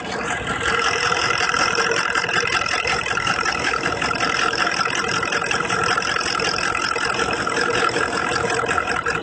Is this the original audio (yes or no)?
no